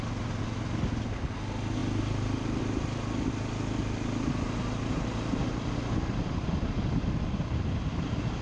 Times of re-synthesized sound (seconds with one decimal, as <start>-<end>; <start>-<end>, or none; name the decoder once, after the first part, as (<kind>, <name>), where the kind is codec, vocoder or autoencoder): none